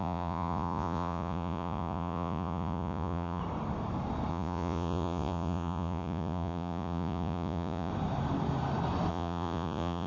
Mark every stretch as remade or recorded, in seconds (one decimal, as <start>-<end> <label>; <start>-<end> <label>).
0.0-3.4 remade; 3.4-4.3 recorded; 4.3-7.9 remade; 7.9-9.1 recorded; 9.1-10.1 remade